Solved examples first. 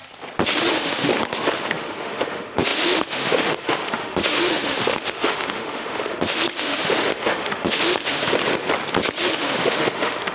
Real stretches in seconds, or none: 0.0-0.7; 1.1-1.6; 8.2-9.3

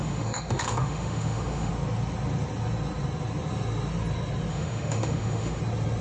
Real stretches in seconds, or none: 1.7-4.5; 5.6-6.0

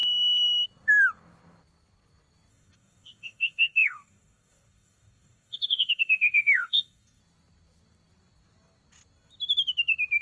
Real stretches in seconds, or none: 0.0-2.5; 7.2-10.2

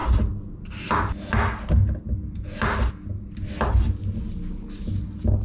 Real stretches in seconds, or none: 0.0-5.4

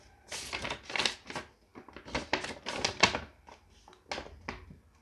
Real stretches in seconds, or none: 0.0-5.0

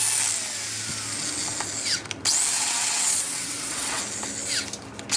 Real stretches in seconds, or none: 0.0-2.5; 4.0-5.2